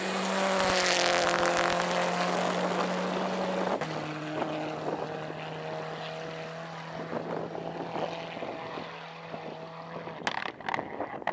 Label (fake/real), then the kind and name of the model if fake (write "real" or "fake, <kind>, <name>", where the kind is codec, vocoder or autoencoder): real